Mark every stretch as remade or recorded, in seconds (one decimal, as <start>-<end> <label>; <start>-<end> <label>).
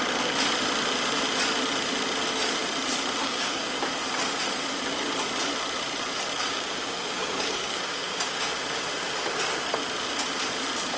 0.0-3.2 recorded; 3.2-3.8 remade; 3.8-6.4 recorded; 6.4-8.5 remade; 8.5-11.0 recorded